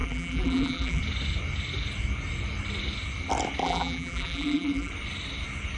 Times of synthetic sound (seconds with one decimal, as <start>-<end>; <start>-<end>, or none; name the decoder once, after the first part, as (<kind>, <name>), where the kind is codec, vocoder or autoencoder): 0.0-1.0 (vocoder, BigVGAN v2); 3.6-4.9